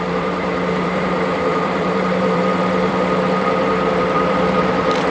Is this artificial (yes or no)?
yes